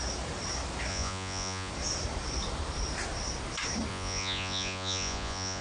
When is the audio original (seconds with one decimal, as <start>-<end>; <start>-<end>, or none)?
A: 0.0-0.9; 1.7-3.9